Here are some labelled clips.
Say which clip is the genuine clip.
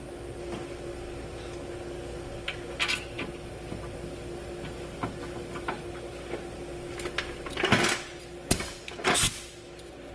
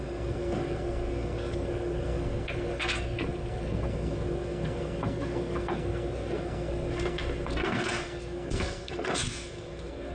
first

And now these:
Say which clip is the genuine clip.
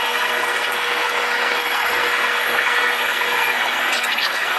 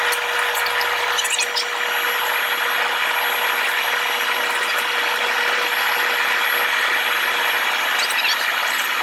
second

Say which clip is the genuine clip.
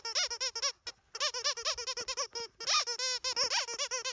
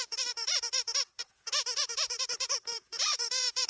first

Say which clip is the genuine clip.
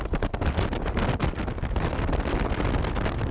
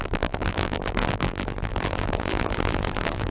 first